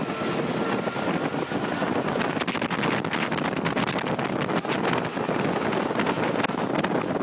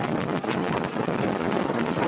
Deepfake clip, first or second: second